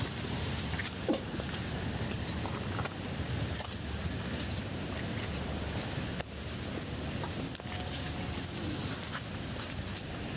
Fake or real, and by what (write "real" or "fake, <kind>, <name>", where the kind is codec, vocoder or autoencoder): real